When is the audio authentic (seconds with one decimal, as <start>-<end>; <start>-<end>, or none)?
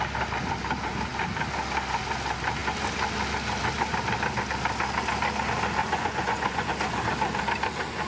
0.0-5.8; 6.7-8.1